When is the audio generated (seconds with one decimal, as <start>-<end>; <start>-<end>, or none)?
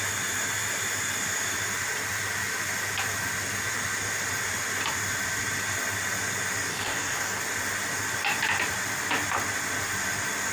6.7-7.4